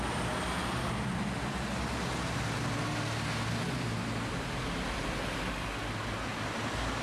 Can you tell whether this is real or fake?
real